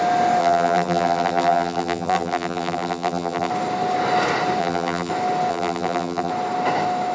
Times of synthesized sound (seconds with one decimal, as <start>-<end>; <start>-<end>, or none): 0.4-3.5; 4.6-5.1; 5.5-6.3